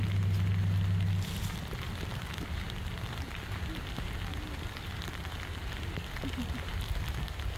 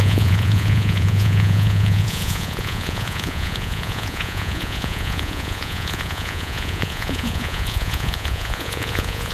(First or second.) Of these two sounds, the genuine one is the first